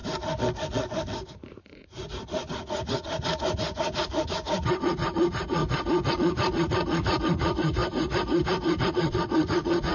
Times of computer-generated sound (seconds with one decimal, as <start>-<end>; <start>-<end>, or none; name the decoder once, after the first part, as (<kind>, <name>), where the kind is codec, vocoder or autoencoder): 1.3-5.6 (vocoder, Vocos); 6.1-7.8; 8.9-9.9